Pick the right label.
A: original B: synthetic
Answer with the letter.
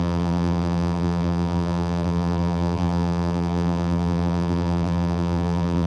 B